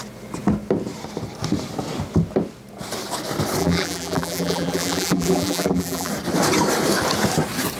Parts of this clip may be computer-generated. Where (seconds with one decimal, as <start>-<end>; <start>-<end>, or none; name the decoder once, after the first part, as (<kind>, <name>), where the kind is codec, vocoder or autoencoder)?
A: 3.6-6.1 (vocoder, BigVGAN v2)